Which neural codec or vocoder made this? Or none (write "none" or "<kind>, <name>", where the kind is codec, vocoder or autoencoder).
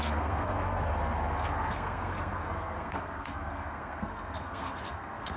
codec, SNAC